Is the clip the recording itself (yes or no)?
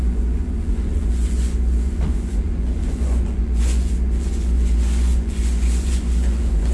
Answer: no